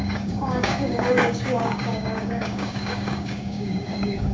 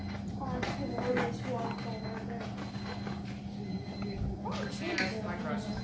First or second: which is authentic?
second